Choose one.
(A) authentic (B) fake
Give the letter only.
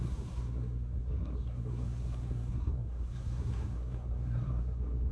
B